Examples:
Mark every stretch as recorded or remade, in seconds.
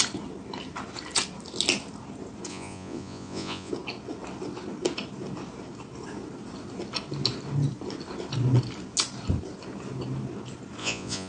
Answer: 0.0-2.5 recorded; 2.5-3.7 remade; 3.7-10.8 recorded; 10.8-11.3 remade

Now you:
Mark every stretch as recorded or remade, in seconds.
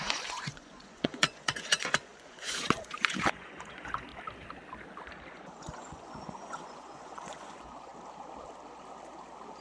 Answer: 0.0-4.1 remade; 4.1-5.3 recorded; 5.3-7.9 remade; 7.9-9.6 recorded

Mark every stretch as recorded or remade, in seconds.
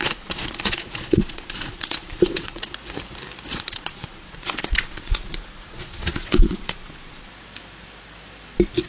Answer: 0.0-2.7 remade; 2.7-3.5 recorded; 3.5-7.3 remade; 7.3-8.9 recorded